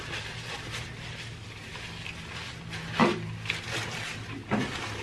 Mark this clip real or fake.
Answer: real